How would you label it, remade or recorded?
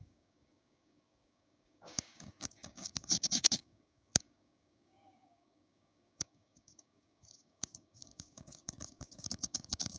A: remade